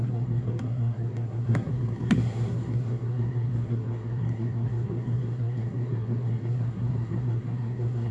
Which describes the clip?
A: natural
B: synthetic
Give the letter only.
B